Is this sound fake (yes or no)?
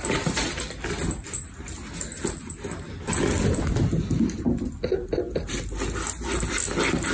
no